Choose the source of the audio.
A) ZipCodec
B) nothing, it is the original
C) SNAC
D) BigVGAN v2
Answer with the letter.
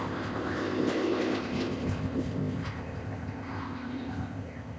A